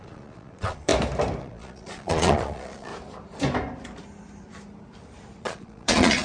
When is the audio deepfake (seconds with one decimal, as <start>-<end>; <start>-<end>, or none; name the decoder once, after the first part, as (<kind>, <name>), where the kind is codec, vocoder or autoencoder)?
0.0-0.9 (vocoder, Vocos); 1.4-2.9; 5.4-6.2